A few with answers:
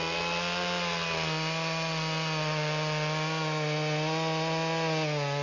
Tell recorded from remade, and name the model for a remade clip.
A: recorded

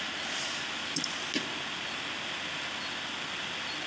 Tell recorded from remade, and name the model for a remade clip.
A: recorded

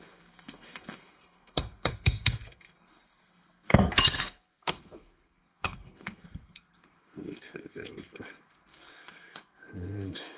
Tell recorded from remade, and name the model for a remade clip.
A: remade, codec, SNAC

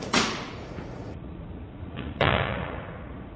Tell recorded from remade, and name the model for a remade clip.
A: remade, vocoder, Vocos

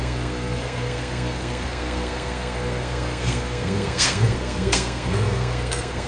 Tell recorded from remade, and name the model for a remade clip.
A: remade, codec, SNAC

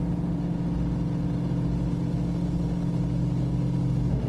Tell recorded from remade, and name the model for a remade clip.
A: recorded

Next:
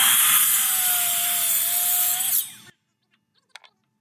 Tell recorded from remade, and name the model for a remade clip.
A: recorded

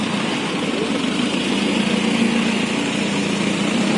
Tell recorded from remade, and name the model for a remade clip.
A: recorded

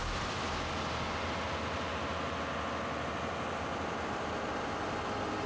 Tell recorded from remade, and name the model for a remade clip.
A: recorded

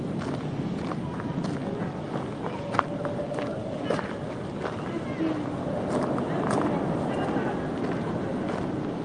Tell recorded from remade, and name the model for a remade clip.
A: recorded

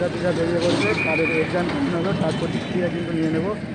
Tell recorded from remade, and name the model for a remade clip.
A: recorded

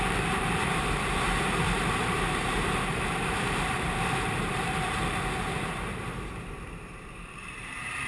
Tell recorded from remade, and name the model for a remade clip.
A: remade, vocoder, BigVGAN v2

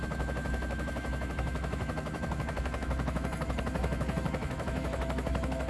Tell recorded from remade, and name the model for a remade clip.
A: remade, autoencoder, DAC-VAE